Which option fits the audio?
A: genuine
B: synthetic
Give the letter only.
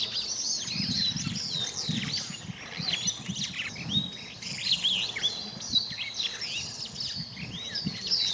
A